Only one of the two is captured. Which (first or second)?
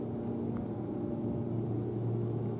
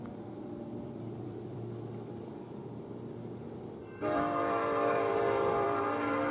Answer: first